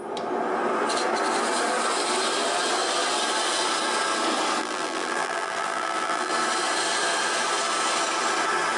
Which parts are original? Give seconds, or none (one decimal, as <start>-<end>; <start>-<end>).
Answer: 0.0-4.6; 6.3-8.8